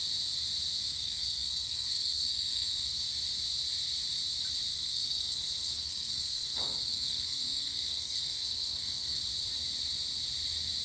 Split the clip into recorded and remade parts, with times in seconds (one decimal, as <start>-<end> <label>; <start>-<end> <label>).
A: 0.0-0.9 recorded; 0.9-2.8 remade; 2.8-4.7 recorded; 4.7-9.2 remade; 9.2-10.8 recorded

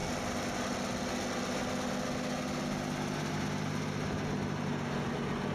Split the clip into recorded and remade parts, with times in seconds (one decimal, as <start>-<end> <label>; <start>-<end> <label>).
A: 0.0-5.5 recorded

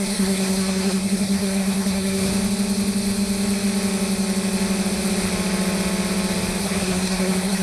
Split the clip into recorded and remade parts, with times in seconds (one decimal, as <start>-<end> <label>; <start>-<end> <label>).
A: 0.0-2.3 remade; 2.3-6.6 recorded; 6.6-7.6 remade

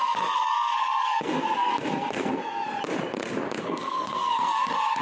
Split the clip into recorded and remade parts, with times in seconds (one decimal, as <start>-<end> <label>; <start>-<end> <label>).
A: 0.0-2.6 remade; 2.6-3.6 recorded; 3.6-5.0 remade

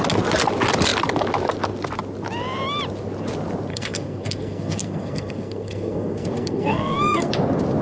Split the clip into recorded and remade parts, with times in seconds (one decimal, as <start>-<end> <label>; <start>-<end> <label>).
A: 0.0-3.7 recorded; 3.7-7.3 remade; 7.3-7.8 recorded

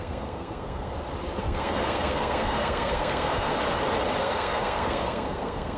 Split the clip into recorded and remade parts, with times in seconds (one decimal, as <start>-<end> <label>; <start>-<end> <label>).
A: 0.0-0.9 remade; 0.9-1.4 recorded; 1.4-3.5 remade; 3.5-4.2 recorded; 4.2-5.8 remade

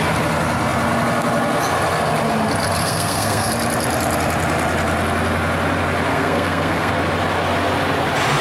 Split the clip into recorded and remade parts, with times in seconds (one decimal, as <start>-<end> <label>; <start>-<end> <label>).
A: 0.0-2.8 recorded; 2.8-3.5 remade; 3.5-6.1 recorded; 6.1-6.9 remade; 6.9-8.4 recorded

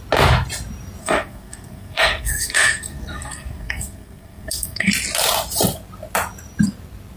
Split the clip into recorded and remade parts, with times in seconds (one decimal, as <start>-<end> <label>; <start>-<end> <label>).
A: 0.0-1.0 recorded; 1.0-4.9 remade; 4.9-7.2 recorded